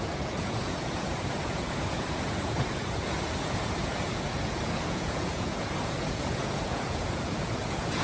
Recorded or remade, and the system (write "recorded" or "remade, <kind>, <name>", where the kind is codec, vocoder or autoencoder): remade, vocoder, Vocos